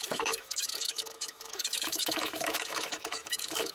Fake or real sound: fake